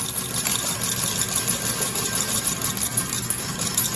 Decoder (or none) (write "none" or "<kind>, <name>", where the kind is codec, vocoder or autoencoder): none